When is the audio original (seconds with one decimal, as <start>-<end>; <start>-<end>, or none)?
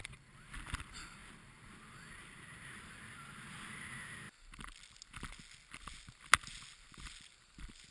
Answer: 0.0-7.9